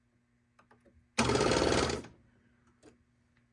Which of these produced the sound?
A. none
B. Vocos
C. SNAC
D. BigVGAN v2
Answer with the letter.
A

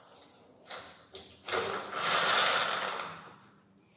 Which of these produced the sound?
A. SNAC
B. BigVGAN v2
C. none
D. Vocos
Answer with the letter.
C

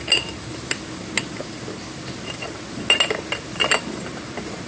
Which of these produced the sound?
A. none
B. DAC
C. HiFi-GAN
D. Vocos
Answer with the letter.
A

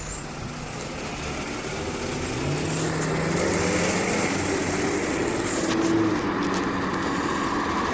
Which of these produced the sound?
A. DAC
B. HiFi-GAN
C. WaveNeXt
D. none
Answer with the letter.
D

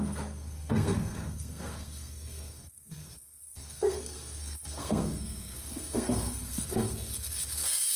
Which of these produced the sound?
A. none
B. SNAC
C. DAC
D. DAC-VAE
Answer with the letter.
B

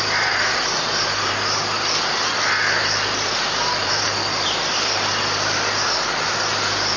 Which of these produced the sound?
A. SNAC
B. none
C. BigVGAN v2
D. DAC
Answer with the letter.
B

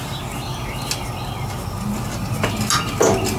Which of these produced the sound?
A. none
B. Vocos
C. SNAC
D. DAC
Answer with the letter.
A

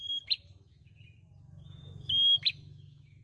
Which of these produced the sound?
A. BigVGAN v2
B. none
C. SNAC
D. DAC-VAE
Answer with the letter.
D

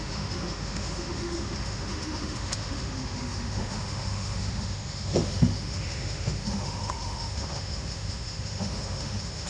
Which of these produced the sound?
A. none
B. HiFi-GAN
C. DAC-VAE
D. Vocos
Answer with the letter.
C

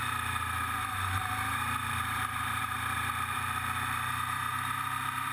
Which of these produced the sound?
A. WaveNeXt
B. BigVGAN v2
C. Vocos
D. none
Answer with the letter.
B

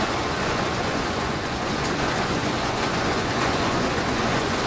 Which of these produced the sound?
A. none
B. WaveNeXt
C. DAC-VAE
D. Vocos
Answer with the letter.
D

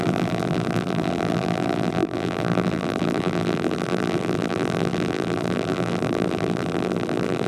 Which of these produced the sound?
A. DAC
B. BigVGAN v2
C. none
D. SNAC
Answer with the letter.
B